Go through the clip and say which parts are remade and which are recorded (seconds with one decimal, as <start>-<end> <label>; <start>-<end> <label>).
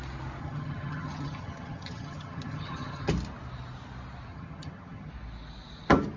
0.0-0.4 recorded; 0.4-3.1 remade; 3.1-4.3 recorded; 4.3-5.1 remade; 5.1-6.2 recorded